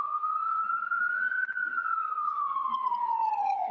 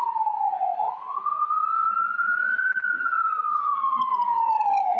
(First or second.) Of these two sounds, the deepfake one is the first